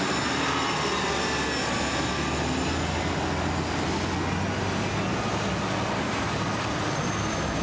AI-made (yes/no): no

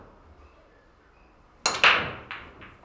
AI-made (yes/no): no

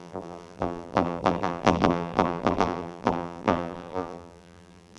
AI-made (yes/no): yes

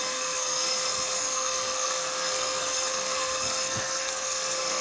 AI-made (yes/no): yes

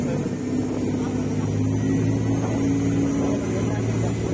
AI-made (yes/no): no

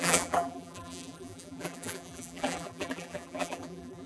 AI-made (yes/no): yes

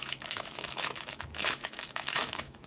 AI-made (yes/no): yes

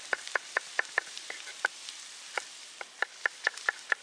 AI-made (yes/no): no